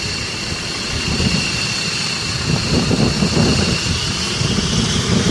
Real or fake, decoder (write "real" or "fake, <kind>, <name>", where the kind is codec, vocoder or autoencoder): real